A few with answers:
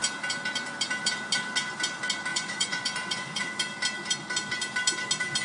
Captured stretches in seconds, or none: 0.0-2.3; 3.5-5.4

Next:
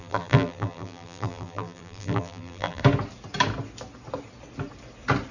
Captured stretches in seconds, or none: 2.8-5.3

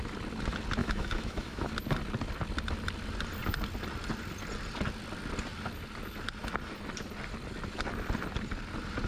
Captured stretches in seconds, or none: 0.0-0.8; 1.7-9.1

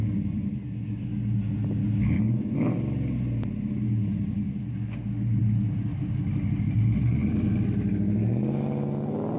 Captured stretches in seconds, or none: 0.0-9.4